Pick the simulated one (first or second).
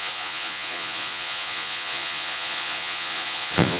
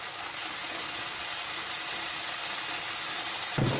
first